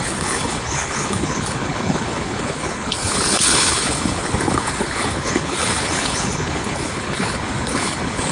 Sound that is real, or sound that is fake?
fake